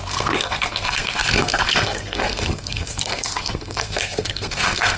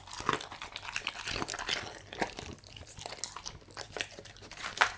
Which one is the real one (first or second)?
second